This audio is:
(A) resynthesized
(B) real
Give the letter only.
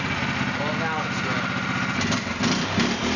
B